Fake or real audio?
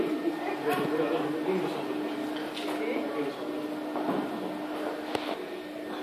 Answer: real